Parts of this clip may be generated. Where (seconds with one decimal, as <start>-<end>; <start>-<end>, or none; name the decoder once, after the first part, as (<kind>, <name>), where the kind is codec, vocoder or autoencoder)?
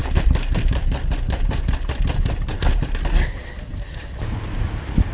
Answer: none